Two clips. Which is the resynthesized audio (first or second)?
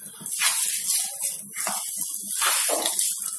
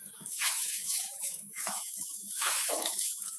second